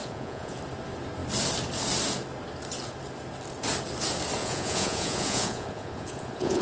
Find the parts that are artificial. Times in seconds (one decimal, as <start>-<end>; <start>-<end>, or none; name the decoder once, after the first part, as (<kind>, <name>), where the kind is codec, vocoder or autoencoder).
0.0-0.6 (vocoder, Vocos); 4.4-6.6